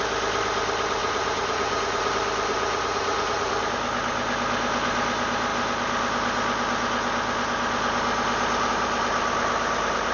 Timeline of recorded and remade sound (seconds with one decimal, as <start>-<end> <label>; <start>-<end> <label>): 0.0-1.0 recorded; 1.0-2.1 remade; 2.1-2.5 recorded; 2.5-3.5 remade; 3.5-10.1 recorded